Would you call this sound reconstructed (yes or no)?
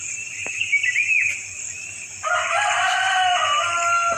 no